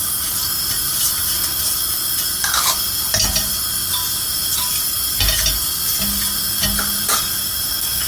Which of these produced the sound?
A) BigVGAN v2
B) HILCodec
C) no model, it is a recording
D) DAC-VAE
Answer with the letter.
C